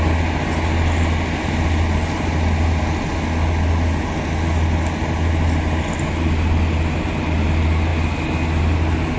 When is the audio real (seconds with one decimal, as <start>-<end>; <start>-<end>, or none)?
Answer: 0.0-9.2